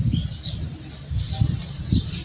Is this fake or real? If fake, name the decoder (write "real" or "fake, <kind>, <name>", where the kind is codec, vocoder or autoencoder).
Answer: real